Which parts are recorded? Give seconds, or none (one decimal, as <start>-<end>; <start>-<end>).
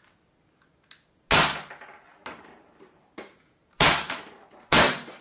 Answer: 0.0-2.1